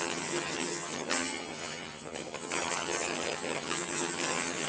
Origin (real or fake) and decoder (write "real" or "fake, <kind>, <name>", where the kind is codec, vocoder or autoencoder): fake, vocoder, HiFi-GAN